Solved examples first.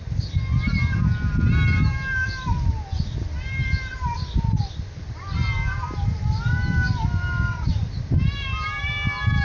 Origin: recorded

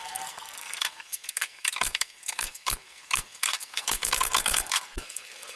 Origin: remade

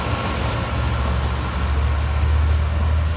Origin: recorded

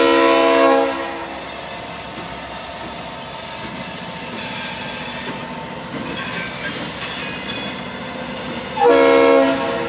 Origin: recorded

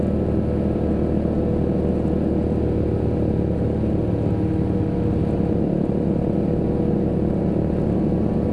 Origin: recorded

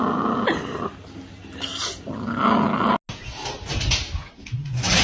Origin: recorded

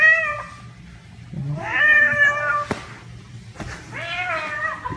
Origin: recorded